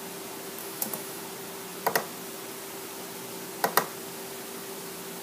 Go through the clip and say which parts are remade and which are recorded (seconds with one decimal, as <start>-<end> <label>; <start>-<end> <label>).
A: 0.0-0.6 recorded; 0.6-1.2 remade; 1.2-5.2 recorded